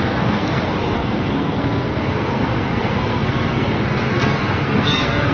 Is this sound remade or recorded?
remade